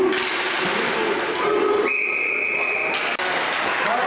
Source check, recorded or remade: recorded